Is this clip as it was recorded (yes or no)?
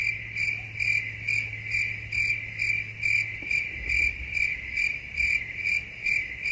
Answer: yes